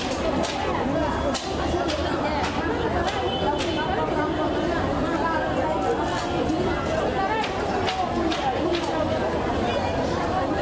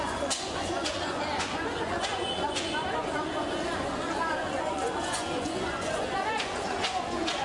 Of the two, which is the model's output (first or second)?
second